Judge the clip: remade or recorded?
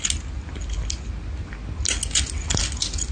recorded